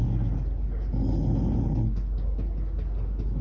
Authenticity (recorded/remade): recorded